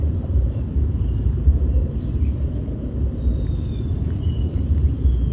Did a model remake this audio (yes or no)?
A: yes